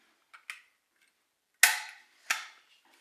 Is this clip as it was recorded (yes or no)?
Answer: yes